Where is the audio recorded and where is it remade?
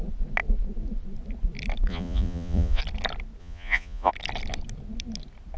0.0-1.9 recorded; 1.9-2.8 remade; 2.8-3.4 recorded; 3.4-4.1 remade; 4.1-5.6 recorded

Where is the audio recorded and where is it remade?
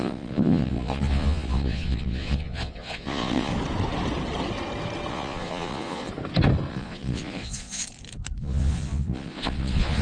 0.0-3.5 remade; 3.5-5.1 recorded; 5.1-6.1 remade; 6.1-6.7 recorded; 6.7-7.8 remade; 7.8-8.4 recorded; 8.4-10.0 remade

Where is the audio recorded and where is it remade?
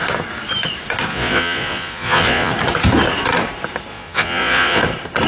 0.0-1.1 recorded; 1.1-2.5 remade; 2.5-3.9 recorded; 3.9-4.8 remade; 4.8-5.3 recorded